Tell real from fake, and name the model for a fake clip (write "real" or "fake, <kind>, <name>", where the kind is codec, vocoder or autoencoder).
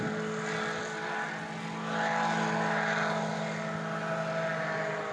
real